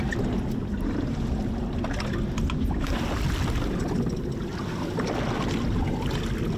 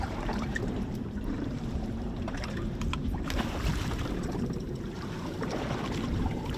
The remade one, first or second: second